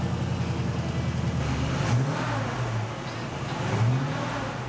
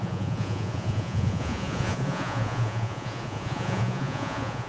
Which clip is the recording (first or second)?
first